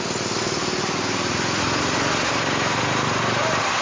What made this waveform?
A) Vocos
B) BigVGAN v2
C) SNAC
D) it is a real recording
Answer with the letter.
D